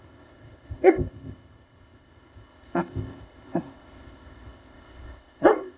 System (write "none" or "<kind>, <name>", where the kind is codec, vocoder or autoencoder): codec, ZipCodec